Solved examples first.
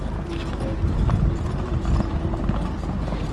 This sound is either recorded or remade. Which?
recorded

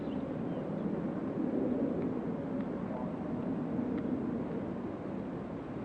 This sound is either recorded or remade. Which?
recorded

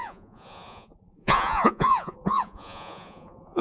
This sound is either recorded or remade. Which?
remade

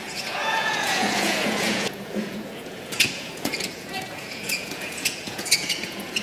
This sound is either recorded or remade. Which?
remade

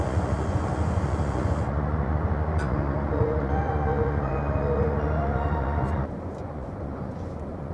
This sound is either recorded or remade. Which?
remade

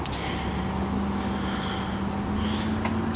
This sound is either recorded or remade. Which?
recorded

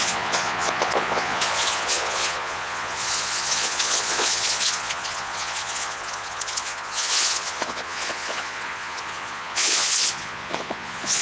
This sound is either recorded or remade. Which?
remade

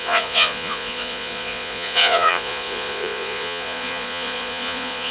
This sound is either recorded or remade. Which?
remade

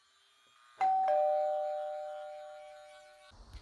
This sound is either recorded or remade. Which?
recorded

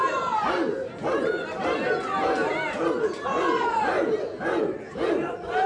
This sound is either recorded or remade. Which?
recorded